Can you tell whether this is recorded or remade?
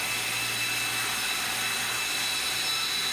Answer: recorded